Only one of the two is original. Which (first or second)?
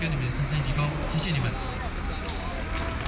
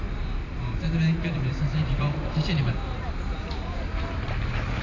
first